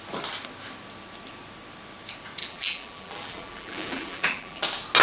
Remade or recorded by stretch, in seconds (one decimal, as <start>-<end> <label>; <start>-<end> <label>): 0.0-2.4 recorded; 2.4-4.6 remade; 4.6-5.0 recorded